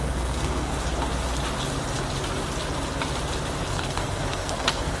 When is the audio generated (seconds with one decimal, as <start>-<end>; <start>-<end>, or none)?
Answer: 0.0-0.7; 3.7-5.0